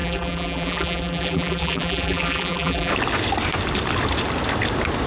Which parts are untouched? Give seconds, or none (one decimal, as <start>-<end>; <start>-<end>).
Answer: 2.9-5.1